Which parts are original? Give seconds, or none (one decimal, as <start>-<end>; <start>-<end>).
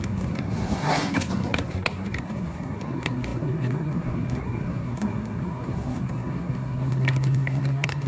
none